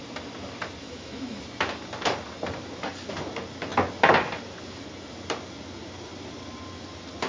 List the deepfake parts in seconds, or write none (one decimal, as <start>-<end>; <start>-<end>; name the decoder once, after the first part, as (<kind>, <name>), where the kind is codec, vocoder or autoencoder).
0.8-1.4 (autoencoder, DAC-VAE)